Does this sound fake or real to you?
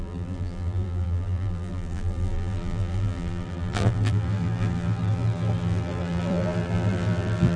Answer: fake